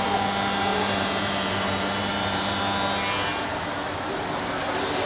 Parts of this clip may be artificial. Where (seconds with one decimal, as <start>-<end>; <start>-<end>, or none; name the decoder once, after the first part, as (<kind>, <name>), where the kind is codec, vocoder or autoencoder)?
0.7-2.6 (vocoder, BigVGAN v2)